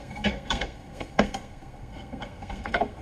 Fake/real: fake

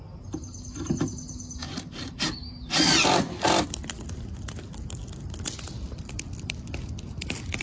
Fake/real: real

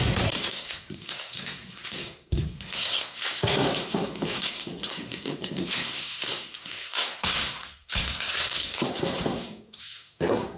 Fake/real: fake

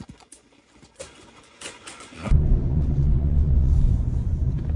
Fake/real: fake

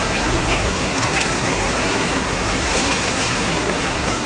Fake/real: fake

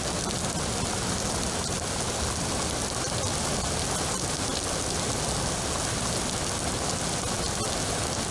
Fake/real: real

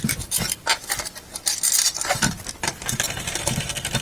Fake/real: real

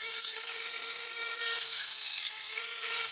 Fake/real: fake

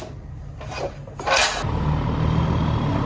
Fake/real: real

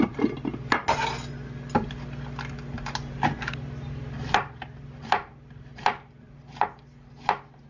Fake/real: real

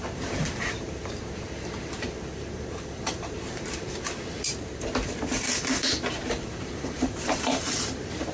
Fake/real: fake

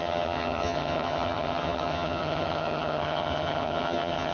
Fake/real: fake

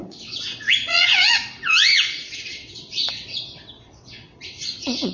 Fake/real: fake